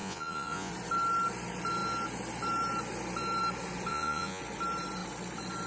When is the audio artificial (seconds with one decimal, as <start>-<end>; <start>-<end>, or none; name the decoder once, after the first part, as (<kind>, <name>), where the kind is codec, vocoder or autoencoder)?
0.0-0.7 (vocoder, Vocos); 3.9-4.4